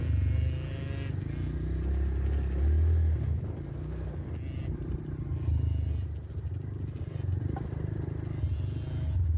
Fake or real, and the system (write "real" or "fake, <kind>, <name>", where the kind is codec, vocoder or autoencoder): real